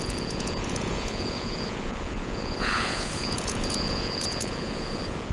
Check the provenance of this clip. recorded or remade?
remade